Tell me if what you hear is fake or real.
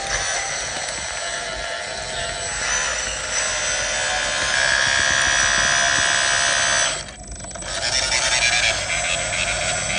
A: real